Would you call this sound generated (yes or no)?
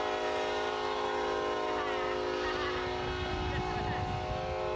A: no